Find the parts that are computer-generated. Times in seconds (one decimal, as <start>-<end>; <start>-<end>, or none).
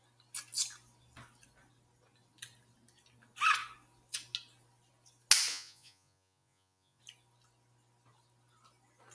5.5-7.0